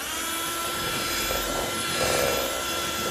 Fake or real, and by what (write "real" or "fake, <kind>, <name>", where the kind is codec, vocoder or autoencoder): fake, vocoder, BigVGAN v2